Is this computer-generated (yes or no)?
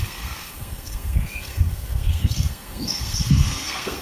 yes